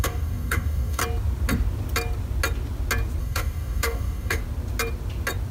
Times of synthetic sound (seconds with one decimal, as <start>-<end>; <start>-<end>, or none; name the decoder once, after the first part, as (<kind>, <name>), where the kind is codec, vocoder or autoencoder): 0.0-1.0 (codec, DAC); 3.2-4.4